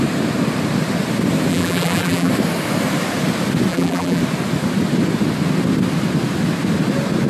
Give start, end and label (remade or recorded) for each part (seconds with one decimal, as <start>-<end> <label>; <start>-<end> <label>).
0.0-1.5 recorded; 1.5-2.3 remade; 2.3-3.7 recorded; 3.7-4.2 remade; 4.2-7.3 recorded